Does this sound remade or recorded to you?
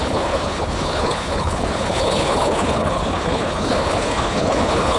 remade